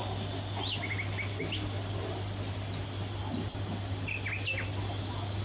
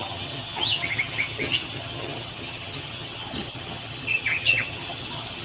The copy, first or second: second